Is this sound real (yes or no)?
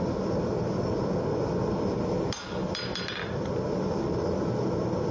yes